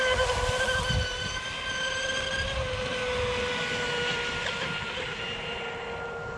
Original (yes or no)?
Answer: yes